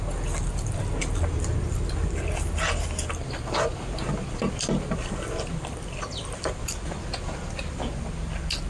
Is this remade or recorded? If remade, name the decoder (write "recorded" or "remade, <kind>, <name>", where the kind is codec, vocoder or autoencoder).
recorded